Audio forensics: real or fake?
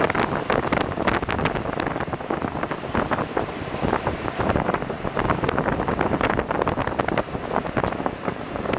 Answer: real